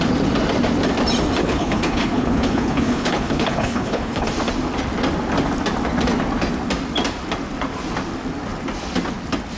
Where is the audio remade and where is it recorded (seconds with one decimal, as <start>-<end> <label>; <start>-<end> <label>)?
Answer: 0.0-1.4 recorded; 1.4-4.3 remade; 4.3-9.6 recorded

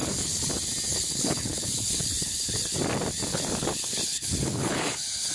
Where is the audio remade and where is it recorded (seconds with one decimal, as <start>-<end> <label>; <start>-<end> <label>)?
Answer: 0.0-0.5 remade; 0.5-0.9 recorded; 0.9-2.8 remade; 2.8-3.3 recorded; 3.3-5.3 remade

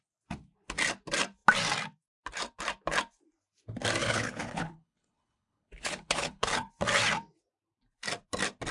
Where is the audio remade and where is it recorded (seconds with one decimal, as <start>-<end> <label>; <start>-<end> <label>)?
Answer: 0.0-4.0 recorded; 4.0-6.7 remade; 6.7-8.7 recorded

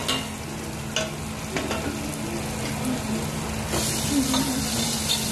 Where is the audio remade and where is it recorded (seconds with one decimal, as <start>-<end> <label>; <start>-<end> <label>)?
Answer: 0.0-5.3 recorded

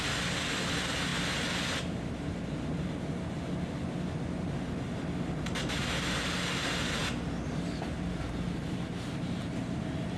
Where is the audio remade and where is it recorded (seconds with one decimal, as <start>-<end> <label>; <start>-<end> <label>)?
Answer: 0.0-10.2 recorded